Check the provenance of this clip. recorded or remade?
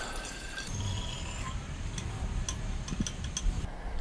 recorded